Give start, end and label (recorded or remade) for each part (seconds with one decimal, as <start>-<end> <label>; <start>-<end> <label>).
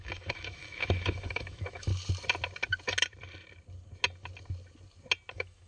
0.0-1.9 remade; 1.9-5.3 recorded; 5.3-5.7 remade